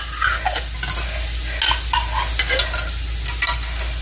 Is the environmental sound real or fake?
real